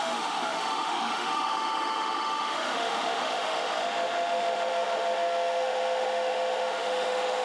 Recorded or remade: remade